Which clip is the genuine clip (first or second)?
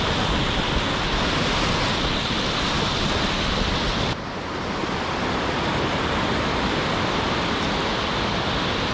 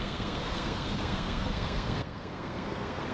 first